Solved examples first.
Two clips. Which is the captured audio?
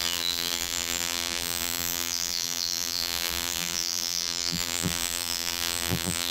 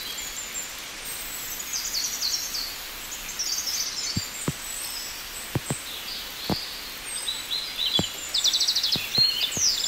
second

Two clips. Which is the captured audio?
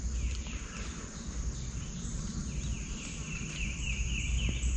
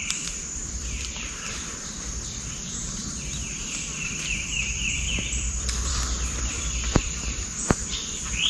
first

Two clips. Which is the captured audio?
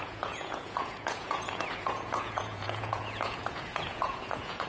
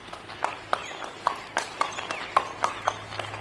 second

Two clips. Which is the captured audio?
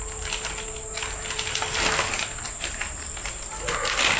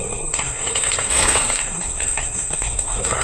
first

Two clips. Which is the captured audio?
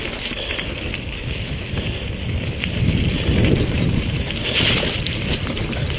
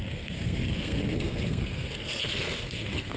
first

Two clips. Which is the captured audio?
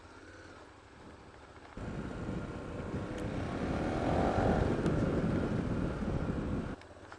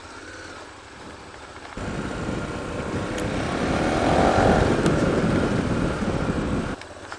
first